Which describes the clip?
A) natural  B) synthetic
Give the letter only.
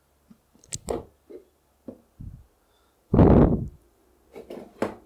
A